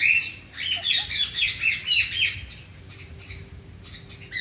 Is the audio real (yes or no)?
yes